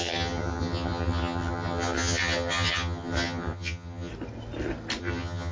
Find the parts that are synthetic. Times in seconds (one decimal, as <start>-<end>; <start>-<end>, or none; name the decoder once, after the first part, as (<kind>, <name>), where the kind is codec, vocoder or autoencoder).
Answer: 0.0-4.1 (vocoder, HiFi-GAN); 5.0-5.5